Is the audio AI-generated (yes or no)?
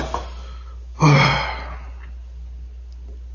no